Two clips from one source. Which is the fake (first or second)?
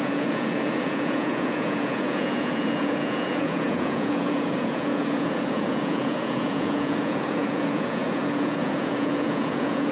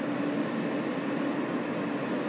first